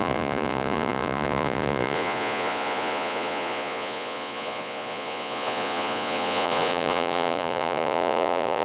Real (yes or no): no